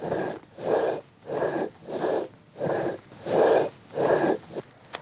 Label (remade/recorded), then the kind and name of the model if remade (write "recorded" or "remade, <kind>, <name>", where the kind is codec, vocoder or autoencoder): recorded